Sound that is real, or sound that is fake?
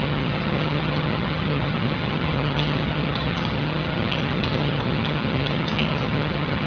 fake